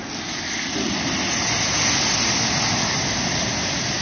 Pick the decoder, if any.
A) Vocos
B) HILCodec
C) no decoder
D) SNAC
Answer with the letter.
C